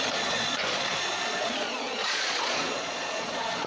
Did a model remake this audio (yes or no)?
yes